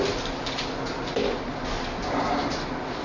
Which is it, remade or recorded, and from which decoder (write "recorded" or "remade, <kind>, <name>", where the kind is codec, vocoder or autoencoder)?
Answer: recorded